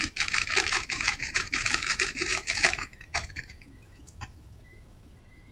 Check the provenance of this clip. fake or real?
fake